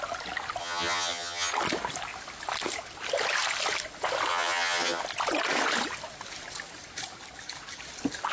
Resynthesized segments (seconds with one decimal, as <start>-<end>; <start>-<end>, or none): 0.6-1.5; 4.3-5.0